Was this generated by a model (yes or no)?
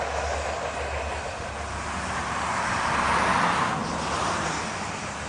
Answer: no